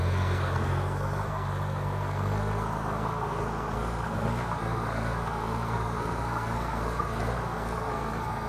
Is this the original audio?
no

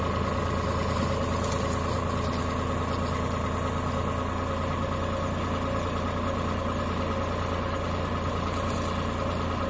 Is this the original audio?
yes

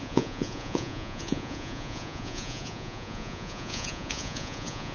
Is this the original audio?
no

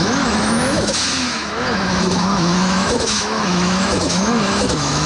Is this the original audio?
no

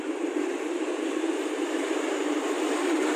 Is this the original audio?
no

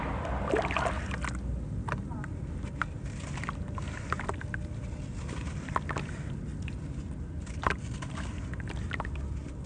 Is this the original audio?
yes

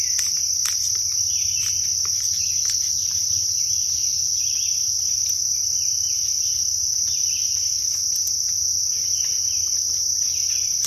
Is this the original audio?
yes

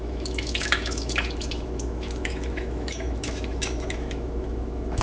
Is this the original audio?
no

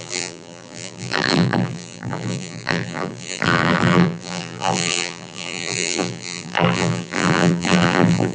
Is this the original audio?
no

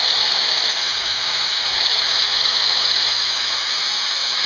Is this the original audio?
no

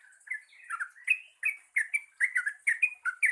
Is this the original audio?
yes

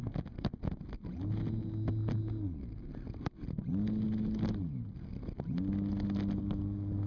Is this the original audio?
yes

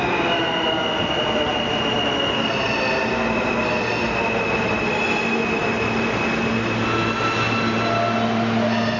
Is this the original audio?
yes